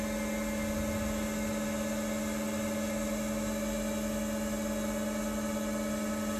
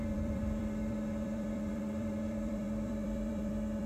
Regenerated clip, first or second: second